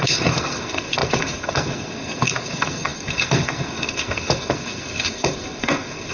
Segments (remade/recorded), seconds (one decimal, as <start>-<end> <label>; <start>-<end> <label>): 0.0-6.1 remade